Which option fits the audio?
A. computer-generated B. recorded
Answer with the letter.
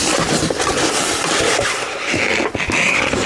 B